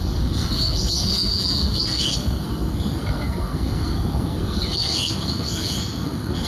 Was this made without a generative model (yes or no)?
no